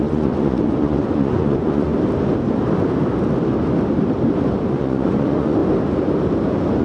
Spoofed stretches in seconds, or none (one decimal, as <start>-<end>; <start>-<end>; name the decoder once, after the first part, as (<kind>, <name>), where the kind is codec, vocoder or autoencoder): 0.0-1.9 (vocoder, Vocos); 4.7-5.6